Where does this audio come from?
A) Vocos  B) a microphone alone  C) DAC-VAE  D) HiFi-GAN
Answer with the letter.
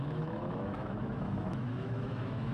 C